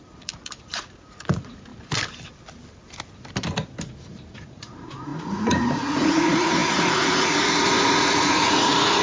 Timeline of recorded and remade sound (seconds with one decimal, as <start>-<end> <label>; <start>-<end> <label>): 0.0-1.7 remade; 1.7-4.3 recorded; 4.3-9.0 remade